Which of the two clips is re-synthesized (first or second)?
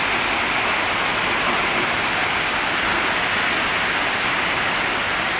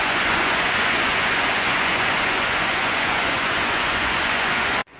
second